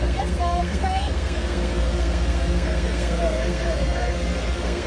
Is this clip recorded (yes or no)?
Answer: no